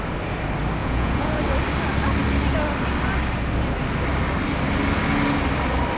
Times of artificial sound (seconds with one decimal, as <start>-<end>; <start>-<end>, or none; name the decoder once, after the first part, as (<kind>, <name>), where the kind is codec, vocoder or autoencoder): 0.8-1.4 (vocoder, Vocos)